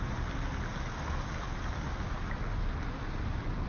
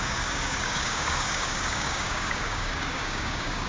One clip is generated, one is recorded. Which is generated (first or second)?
second